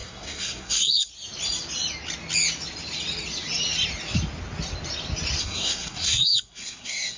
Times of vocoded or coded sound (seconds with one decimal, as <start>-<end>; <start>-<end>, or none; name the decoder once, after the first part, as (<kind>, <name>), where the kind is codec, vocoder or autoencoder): 0.0-1.1 (codec, SNAC); 5.4-7.2